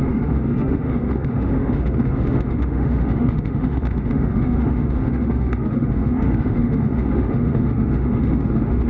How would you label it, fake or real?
fake